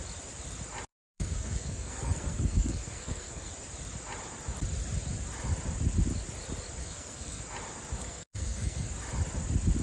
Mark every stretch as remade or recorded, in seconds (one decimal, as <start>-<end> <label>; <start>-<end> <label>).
0.0-0.9 recorded; 0.9-3.5 remade; 3.5-6.8 recorded; 6.8-7.4 remade; 7.4-8.0 recorded; 8.0-8.9 remade; 8.9-9.8 recorded

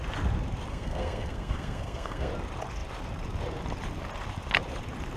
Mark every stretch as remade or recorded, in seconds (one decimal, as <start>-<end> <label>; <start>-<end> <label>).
0.0-0.7 recorded; 0.7-2.3 remade; 2.3-5.2 recorded